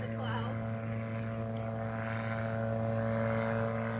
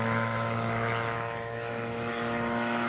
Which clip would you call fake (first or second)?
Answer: second